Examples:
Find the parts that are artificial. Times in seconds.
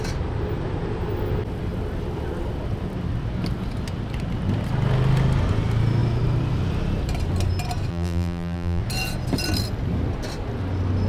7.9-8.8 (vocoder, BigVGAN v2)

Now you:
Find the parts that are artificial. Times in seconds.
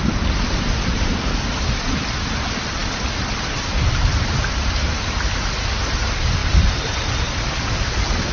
none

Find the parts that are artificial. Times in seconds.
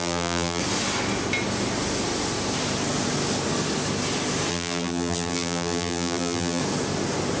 0.0-0.6 (vocoder, BigVGAN v2); 4.5-6.6